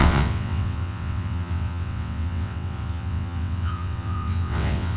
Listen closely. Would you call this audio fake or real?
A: fake